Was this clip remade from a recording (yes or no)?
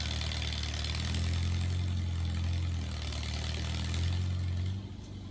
no